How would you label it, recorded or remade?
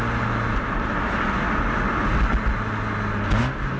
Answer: recorded